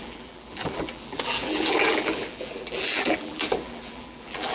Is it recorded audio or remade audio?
remade